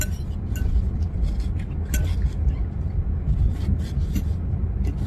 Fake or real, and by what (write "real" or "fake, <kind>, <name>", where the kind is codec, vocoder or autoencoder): real